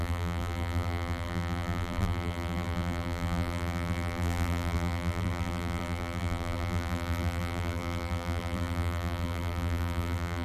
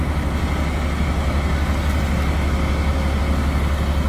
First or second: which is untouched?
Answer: second